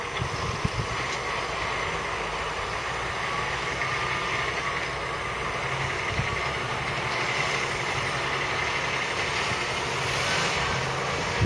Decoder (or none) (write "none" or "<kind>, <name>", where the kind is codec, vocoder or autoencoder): none